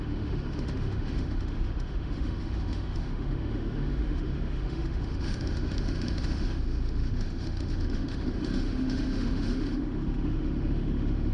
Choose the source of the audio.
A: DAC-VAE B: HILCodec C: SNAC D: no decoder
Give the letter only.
A